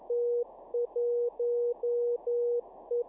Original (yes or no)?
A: no